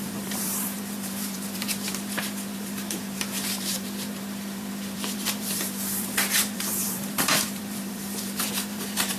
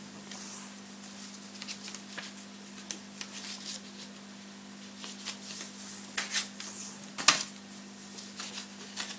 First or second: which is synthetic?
first